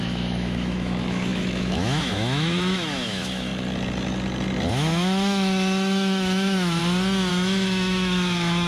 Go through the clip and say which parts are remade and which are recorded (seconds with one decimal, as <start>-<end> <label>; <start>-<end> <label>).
0.0-3.5 remade; 3.5-4.7 recorded; 4.7-6.8 remade; 6.8-7.3 recorded; 7.3-8.7 remade